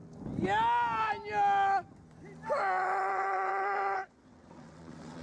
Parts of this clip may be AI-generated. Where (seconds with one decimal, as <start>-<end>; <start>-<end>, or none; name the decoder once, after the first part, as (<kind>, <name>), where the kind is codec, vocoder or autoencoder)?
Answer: 3.1-5.2 (vocoder, WaveNeXt)